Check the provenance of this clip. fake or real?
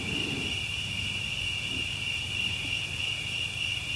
real